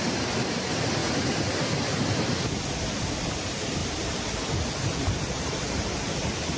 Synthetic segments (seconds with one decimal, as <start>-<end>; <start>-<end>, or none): 0.0-6.6

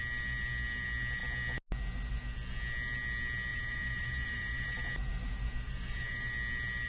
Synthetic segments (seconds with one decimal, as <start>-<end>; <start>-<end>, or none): 3.5-6.3

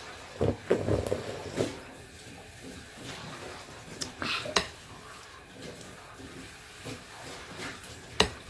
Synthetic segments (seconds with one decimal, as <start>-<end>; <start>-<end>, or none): 1.4-3.4

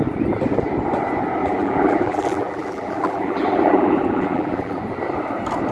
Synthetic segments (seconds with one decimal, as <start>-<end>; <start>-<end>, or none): 1.4-4.8

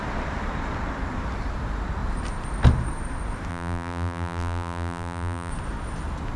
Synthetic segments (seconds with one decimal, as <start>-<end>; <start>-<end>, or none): 3.5-5.5

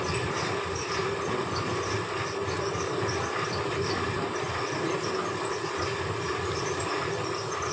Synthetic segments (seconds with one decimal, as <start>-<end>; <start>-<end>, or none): none

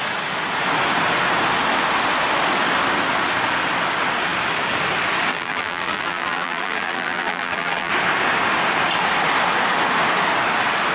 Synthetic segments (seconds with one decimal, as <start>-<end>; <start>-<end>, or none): 5.3-7.9

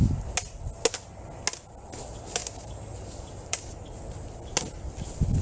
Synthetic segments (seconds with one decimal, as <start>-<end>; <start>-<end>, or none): 2.4-3.9